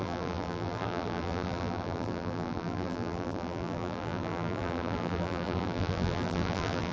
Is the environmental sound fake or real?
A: fake